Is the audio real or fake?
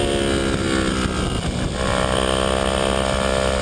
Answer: real